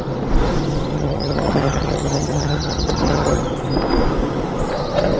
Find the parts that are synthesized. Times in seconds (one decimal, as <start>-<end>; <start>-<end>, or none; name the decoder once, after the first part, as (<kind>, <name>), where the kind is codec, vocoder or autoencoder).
0.9-3.4 (vocoder, HiFi-GAN)